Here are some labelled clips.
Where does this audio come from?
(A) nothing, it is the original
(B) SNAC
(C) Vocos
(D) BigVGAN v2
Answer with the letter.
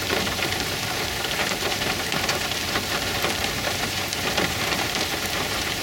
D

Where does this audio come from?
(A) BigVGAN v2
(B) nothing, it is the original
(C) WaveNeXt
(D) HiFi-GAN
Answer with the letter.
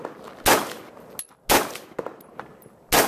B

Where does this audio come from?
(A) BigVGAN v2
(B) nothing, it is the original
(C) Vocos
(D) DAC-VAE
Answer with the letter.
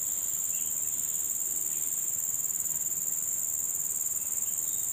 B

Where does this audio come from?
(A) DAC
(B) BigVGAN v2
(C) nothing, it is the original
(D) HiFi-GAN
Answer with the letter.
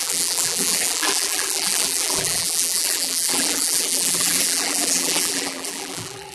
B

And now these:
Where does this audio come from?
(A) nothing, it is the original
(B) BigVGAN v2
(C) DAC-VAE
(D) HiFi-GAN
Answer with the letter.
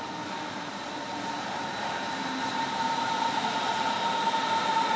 B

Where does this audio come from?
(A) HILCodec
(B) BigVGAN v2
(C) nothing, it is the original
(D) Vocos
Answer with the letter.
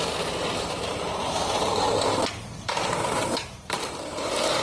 B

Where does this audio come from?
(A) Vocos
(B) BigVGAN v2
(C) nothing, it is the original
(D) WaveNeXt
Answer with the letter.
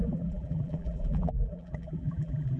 B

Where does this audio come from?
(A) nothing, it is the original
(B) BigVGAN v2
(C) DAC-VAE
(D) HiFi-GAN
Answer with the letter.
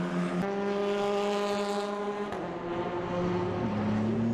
A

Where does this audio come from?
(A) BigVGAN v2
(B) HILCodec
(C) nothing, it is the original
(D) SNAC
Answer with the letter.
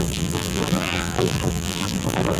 A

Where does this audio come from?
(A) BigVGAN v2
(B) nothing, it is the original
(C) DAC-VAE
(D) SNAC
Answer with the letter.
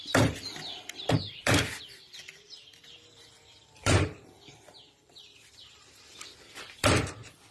A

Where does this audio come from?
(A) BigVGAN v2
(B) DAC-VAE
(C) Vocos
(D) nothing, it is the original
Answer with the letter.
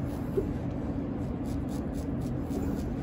D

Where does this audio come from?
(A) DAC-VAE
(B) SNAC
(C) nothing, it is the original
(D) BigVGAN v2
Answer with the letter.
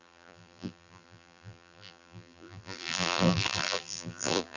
D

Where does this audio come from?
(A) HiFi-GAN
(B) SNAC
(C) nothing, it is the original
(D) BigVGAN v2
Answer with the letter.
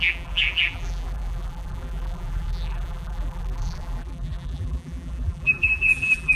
D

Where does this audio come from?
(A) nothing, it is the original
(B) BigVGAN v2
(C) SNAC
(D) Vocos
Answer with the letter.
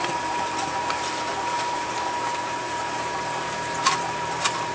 B